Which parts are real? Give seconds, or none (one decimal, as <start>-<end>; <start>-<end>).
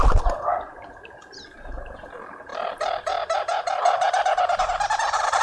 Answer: 0.0-5.4